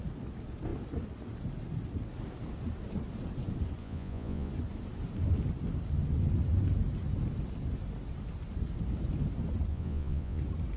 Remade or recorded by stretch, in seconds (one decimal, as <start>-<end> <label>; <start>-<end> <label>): 0.0-3.8 recorded; 3.8-4.5 remade; 4.5-9.7 recorded; 9.7-10.4 remade; 10.4-10.8 recorded

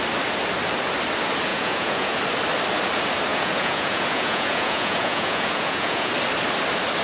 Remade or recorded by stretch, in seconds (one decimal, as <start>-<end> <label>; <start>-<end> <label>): 0.0-1.5 recorded; 1.5-2.2 remade; 2.2-3.3 recorded; 3.3-6.1 remade; 6.1-7.0 recorded

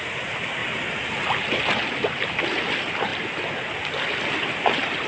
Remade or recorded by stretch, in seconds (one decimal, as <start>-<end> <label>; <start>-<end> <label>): 0.0-5.1 recorded

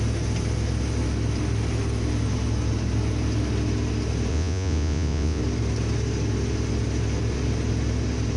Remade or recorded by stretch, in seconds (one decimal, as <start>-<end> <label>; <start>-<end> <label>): 0.0-4.3 recorded; 4.3-5.4 remade; 5.4-8.4 recorded

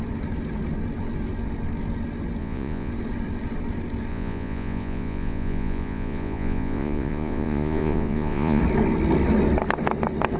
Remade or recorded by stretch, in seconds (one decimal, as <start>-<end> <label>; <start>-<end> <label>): 0.0-2.4 recorded; 2.4-2.9 remade; 2.9-4.1 recorded; 4.1-8.6 remade; 8.6-10.4 recorded

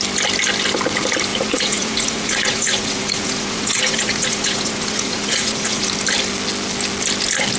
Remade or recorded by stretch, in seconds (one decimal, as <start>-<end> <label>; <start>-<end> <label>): 0.0-1.3 recorded; 1.3-5.9 remade; 5.9-7.6 recorded

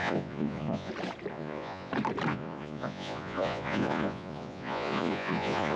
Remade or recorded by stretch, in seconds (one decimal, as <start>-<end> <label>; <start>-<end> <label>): 0.0-0.9 remade; 0.9-1.3 recorded; 1.3-1.9 remade; 1.9-2.3 recorded; 2.3-5.8 remade

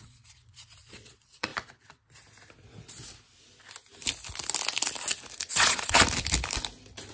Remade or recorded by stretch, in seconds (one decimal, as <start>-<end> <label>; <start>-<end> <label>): 0.0-1.5 remade; 1.5-5.5 recorded; 5.5-6.0 remade; 6.0-7.1 recorded